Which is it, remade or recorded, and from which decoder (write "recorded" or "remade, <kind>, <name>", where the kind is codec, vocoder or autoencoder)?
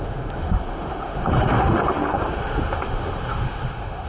remade, autoencoder, DAC-VAE